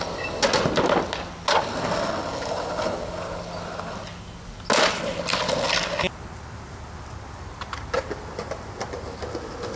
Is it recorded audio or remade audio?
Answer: recorded